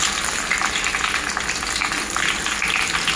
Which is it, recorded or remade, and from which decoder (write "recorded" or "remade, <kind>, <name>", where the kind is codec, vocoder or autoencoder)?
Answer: recorded